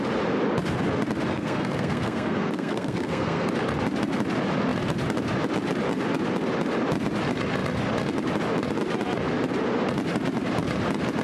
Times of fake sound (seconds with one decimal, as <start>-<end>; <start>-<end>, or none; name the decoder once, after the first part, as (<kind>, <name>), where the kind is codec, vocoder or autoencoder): 1.3-3.5 (codec, SNAC)